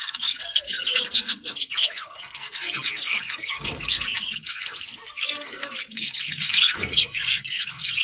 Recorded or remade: remade